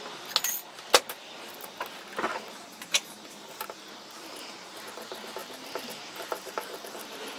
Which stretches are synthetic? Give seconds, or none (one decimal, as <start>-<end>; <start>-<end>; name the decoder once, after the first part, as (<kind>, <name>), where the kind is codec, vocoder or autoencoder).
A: 2.3-3.6 (vocoder, BigVGAN v2); 5.4-7.4